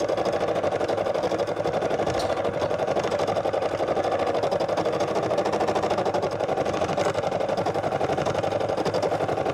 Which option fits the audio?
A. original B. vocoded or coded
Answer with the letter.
A